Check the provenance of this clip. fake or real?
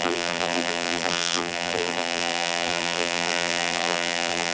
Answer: fake